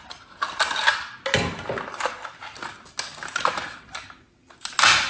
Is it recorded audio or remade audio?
recorded